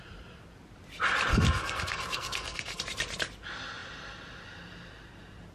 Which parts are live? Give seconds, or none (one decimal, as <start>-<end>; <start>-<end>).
0.0-1.3; 2.8-5.5